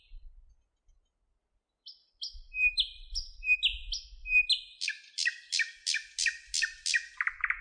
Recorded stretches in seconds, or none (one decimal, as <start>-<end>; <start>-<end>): 0.0-2.0; 3.5-7.6